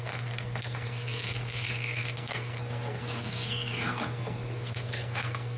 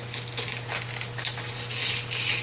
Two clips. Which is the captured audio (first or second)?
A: second